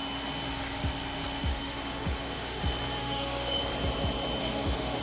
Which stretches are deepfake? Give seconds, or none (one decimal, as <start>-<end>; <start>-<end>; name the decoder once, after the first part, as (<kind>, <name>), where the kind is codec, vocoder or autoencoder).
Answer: 1.5-2.6 (autoencoder, DAC-VAE); 3.0-3.6; 4.4-5.0